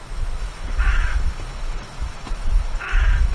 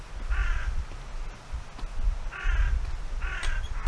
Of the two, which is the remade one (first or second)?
first